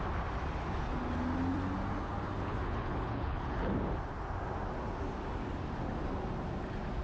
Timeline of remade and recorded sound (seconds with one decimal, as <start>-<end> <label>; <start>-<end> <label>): 0.0-2.5 recorded; 2.5-3.7 remade; 3.7-7.0 recorded